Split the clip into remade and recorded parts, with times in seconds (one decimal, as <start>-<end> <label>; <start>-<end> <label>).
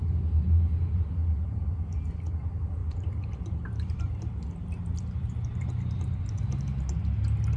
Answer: 0.0-2.8 recorded; 2.8-6.3 remade; 6.3-7.6 recorded